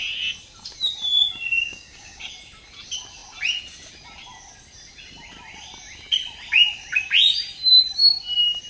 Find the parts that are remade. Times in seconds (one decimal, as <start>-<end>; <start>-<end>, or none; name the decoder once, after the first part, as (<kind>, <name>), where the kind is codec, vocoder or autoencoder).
1.5-2.3 (codec, DAC)